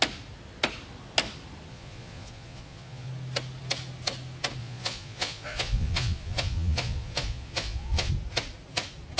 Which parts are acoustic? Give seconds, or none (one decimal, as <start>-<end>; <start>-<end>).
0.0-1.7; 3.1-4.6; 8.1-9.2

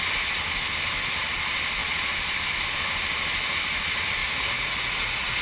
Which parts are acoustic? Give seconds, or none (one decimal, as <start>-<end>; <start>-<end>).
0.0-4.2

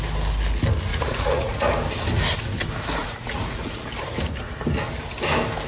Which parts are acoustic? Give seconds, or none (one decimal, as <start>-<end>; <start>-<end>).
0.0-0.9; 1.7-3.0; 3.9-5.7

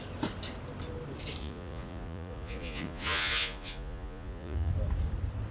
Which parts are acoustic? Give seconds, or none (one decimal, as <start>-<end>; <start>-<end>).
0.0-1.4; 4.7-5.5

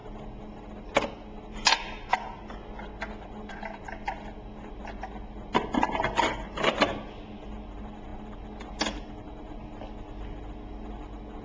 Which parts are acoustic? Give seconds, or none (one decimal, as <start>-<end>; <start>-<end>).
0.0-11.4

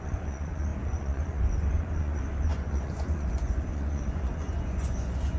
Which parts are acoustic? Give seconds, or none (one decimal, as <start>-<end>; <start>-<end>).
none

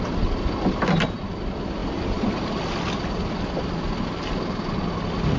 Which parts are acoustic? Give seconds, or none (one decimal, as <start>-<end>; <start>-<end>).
0.0-5.4